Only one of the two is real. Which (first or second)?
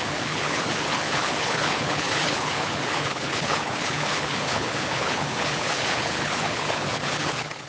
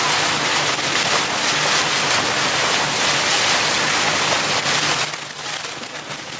second